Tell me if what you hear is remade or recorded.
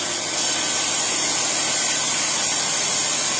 recorded